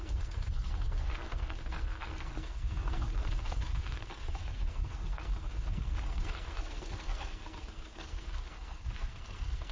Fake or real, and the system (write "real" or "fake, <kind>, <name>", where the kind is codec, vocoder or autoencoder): fake, codec, SNAC